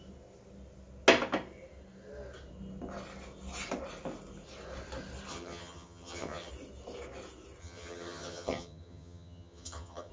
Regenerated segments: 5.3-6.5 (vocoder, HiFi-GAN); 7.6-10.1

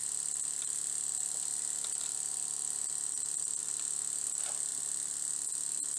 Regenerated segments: none

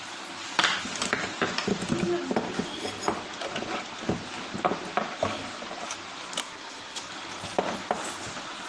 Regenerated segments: 6.4-7.1 (codec, SNAC)

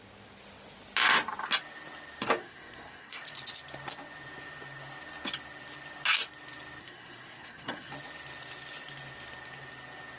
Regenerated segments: 2.4-3.2 (codec, SNAC); 6.8-7.9

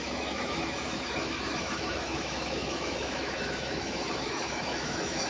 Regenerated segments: 0.0-5.3 (autoencoder, DAC-VAE)

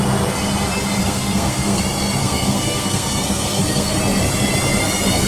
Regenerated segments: 1.0-1.8 (codec, SNAC); 2.2-4.0

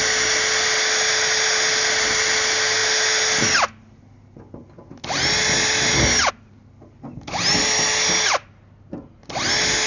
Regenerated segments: none